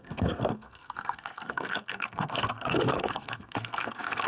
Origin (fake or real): fake